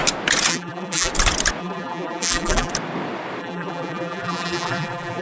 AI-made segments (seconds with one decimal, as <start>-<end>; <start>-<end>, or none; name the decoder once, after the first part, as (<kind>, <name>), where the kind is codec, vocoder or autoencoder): 0.5-1.1 (vocoder, BigVGAN v2); 1.6-2.7; 3.4-5.2